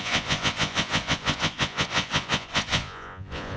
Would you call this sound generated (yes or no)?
yes